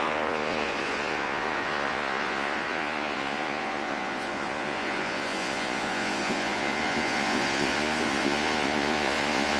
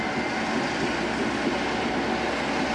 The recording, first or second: second